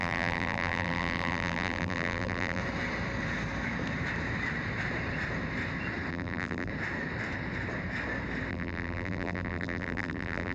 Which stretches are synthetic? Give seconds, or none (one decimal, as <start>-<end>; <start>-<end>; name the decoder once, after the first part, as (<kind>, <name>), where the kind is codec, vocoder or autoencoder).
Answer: 0.0-2.6 (vocoder, BigVGAN v2); 6.1-6.7; 8.5-10.5